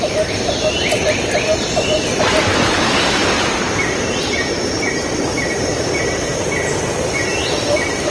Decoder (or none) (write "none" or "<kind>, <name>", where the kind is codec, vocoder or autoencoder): vocoder, BigVGAN v2